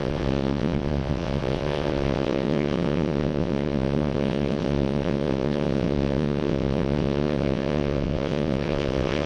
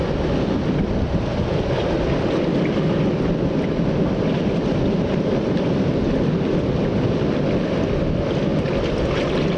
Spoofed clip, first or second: first